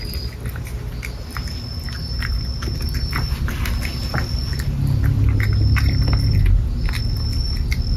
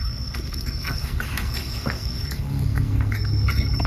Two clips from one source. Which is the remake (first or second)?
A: second